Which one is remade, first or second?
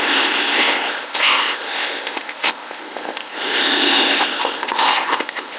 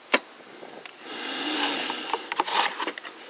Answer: first